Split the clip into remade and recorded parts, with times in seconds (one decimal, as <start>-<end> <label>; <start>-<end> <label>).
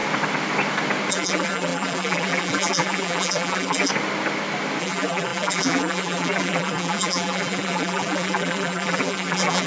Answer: 0.0-1.1 recorded; 1.1-3.9 remade; 3.9-4.8 recorded; 4.8-9.7 remade